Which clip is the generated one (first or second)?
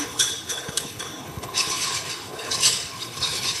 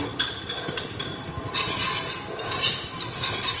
first